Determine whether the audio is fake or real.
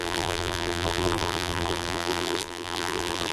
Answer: fake